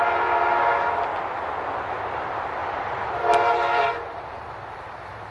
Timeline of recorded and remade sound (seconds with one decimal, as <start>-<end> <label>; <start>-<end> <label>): 0.0-2.6 recorded; 2.6-3.1 remade; 3.1-5.3 recorded